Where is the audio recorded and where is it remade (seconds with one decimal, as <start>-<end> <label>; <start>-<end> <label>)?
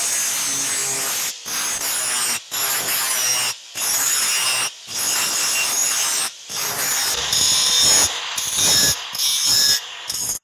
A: 0.0-5.8 recorded; 5.8-7.2 remade; 7.2-10.4 recorded